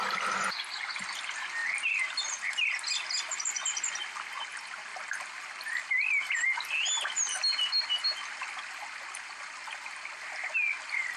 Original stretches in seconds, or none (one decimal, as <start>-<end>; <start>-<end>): 0.0-11.2